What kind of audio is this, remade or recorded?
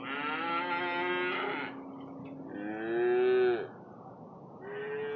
recorded